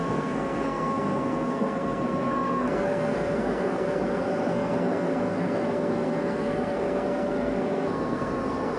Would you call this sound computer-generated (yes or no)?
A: yes